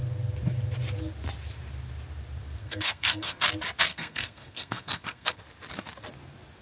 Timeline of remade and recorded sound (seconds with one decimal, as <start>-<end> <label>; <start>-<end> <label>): 0.0-2.6 recorded; 2.6-3.4 remade; 3.4-3.9 recorded; 3.9-5.4 remade; 5.4-6.6 recorded